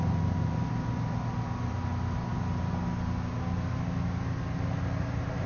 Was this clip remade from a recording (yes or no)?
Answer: no